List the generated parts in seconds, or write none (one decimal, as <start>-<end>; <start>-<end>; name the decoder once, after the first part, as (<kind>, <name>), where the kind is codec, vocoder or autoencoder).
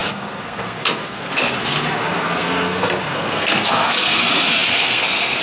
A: 0.0-5.4 (codec, SNAC)